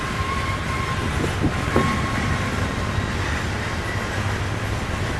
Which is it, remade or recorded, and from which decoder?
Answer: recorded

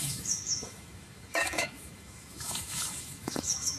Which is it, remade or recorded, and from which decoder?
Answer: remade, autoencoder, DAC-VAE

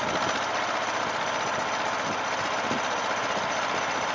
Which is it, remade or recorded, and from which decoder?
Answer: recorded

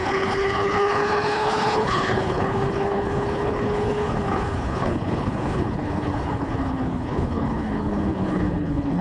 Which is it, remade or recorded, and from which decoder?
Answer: remade, codec, HILCodec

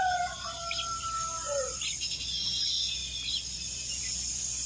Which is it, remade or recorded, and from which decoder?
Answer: recorded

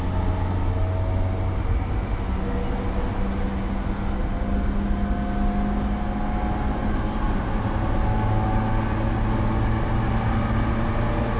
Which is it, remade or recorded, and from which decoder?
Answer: recorded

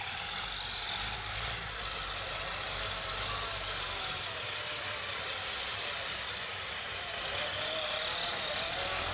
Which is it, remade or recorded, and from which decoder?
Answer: recorded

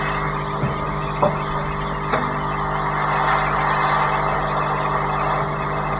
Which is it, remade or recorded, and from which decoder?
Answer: recorded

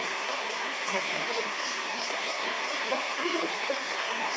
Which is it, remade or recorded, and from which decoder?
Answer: remade, codec, SNAC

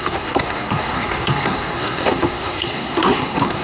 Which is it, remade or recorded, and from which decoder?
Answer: remade, codec, SNAC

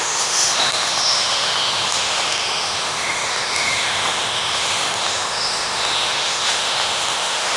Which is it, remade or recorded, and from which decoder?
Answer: remade, autoencoder, DAC-VAE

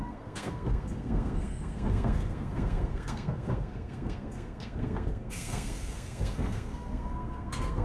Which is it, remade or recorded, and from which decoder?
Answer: remade, codec, SNAC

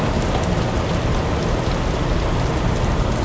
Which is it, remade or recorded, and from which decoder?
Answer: recorded